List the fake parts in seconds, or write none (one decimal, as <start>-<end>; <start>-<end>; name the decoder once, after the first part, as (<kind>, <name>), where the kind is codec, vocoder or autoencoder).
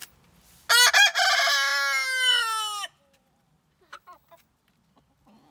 none